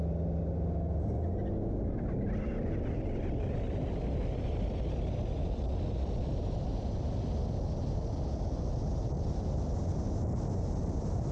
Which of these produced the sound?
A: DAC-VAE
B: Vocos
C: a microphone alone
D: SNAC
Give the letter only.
C